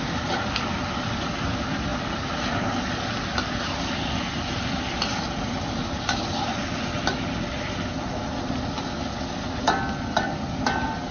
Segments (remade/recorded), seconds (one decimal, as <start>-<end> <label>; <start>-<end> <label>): 0.0-11.1 recorded